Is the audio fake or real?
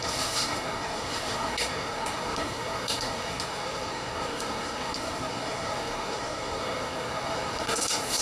fake